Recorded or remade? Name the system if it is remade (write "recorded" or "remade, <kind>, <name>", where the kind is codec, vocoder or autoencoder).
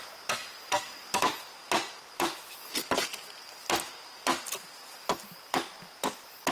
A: recorded